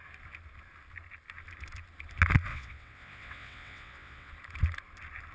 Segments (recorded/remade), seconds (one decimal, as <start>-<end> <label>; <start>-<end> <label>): 0.0-2.5 recorded; 2.5-4.3 remade; 4.3-5.3 recorded